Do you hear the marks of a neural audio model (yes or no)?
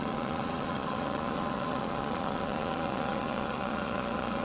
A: yes